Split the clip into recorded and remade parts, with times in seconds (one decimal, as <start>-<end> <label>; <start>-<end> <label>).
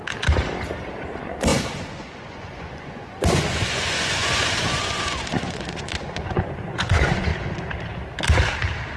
0.0-1.0 recorded; 1.0-7.3 remade; 7.3-9.0 recorded